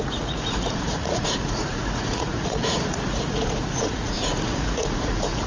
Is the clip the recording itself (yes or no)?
no